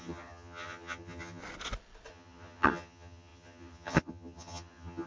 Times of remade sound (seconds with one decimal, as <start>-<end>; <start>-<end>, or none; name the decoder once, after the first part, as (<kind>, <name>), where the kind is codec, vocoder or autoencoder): 0.0-1.4 (vocoder, HiFi-GAN); 2.1-5.1